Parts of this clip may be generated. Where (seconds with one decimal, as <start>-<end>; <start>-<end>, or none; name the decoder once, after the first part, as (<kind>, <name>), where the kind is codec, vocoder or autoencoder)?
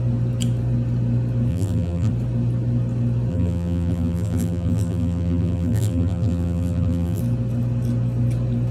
1.5-2.1 (vocoder, BigVGAN v2); 3.3-7.2